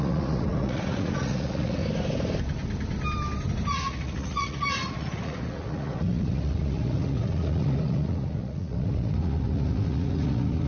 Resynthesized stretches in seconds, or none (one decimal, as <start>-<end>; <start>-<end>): 0.0-1.8; 3.7-10.7